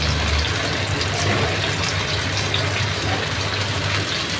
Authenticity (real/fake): real